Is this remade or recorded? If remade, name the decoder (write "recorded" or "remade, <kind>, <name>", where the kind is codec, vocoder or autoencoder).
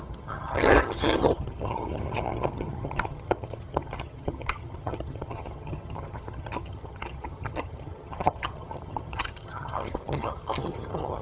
remade, vocoder, HiFi-GAN